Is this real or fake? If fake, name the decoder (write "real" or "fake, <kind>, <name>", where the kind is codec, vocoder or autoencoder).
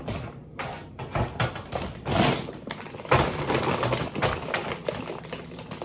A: real